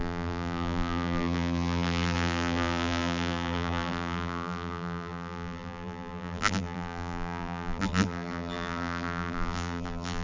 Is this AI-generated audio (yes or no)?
yes